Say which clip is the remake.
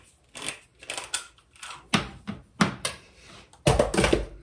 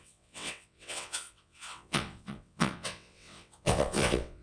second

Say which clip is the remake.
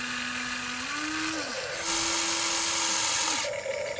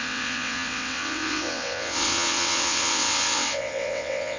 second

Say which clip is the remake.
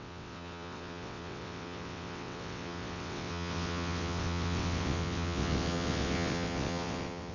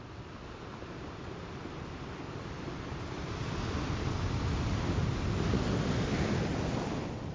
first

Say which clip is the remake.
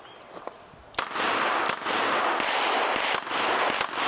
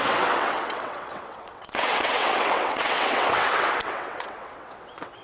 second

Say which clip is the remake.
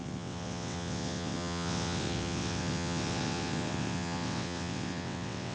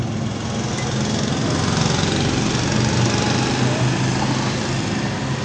first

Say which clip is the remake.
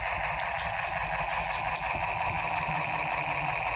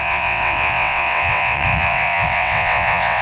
second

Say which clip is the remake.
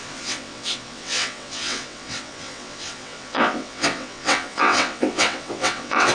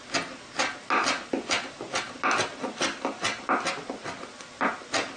first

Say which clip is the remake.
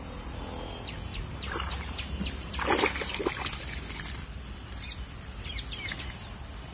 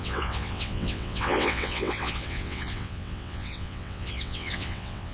second